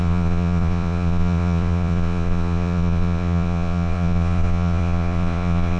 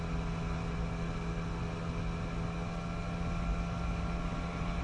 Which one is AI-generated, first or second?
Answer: first